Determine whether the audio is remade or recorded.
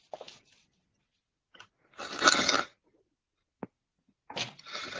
recorded